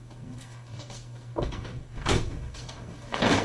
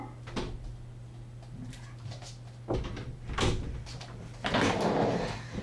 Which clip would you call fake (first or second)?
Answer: first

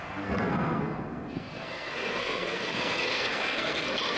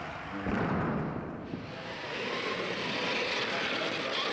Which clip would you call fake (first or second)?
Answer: first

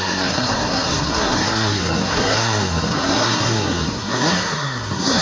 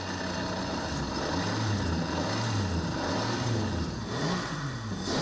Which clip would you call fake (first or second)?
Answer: first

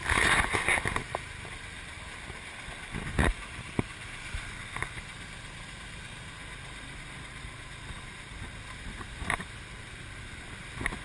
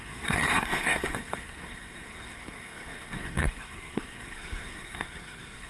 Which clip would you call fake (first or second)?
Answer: second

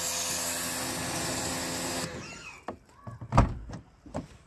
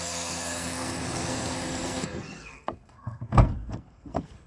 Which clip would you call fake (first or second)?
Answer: second